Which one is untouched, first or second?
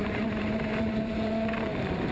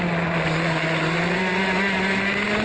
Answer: second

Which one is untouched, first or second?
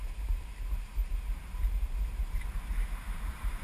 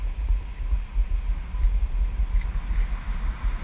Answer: second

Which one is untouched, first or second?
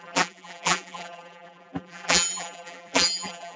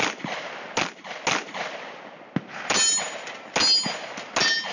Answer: second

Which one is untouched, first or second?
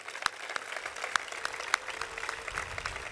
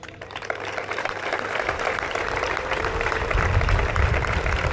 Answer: first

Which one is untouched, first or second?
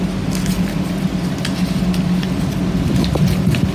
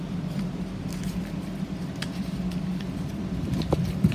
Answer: first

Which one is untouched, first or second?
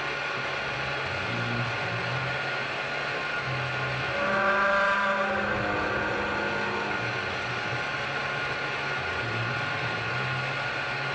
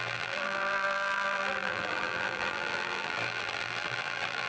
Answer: first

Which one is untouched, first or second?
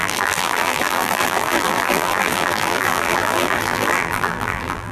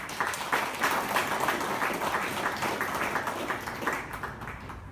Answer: second